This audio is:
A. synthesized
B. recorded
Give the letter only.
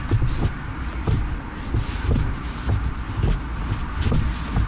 B